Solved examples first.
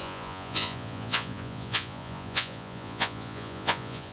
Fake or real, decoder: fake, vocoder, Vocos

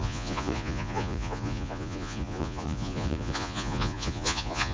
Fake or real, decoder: fake, vocoder, Vocos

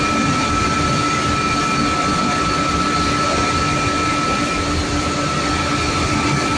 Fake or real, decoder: real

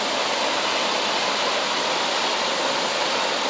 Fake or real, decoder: real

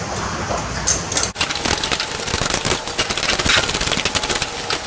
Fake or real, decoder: real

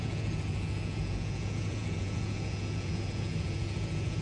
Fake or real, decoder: fake, vocoder, Vocos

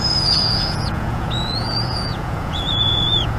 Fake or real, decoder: fake, vocoder, Vocos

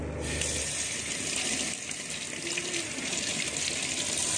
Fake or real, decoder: real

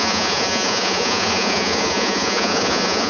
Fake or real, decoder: fake, vocoder, Vocos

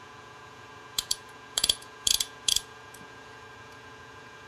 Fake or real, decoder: fake, vocoder, Vocos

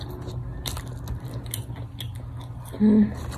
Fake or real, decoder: real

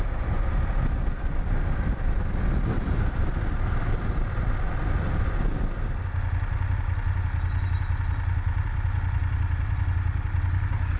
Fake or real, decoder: real